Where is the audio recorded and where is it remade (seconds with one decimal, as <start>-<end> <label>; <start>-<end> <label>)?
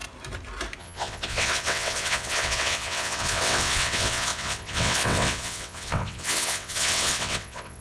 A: 0.0-0.8 recorded; 0.8-7.8 remade